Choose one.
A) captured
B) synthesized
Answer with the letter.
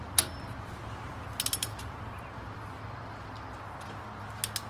A